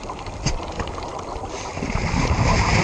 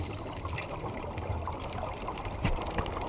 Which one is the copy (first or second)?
second